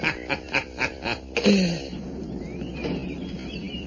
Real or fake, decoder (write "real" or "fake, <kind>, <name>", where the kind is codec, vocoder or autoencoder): real